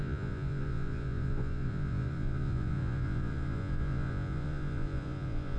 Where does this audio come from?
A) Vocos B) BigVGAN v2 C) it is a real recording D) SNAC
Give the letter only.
A